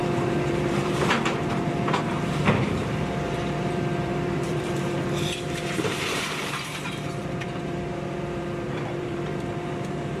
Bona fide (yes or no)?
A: no